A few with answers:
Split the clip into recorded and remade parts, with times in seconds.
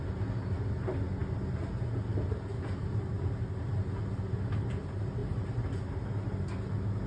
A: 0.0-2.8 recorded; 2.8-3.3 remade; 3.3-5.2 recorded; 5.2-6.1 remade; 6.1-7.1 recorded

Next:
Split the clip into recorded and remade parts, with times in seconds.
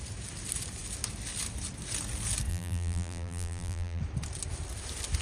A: 0.0-2.5 recorded; 2.5-4.0 remade; 4.0-5.2 recorded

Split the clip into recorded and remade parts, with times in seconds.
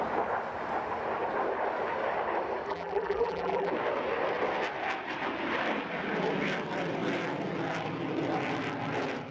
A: 0.0-2.7 recorded; 2.7-3.7 remade; 3.7-9.3 recorded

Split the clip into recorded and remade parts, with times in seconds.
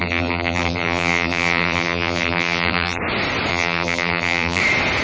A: 0.0-3.0 remade; 3.0-3.5 recorded; 3.5-4.6 remade; 4.6-5.0 recorded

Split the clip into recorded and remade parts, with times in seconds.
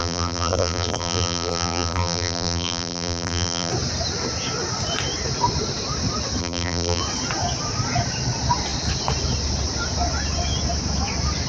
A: 0.0-3.7 remade; 3.7-6.4 recorded; 6.4-7.0 remade; 7.0-11.5 recorded